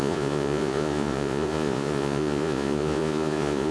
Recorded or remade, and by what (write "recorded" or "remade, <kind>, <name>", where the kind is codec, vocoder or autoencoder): remade, vocoder, Vocos